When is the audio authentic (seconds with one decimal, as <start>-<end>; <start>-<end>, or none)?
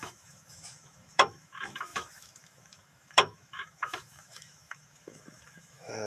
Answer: none